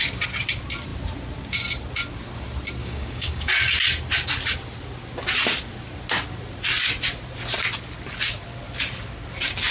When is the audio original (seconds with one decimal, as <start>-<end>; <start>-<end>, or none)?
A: 0.0-2.8; 3.5-9.7